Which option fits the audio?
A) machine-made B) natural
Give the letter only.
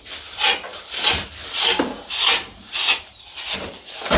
B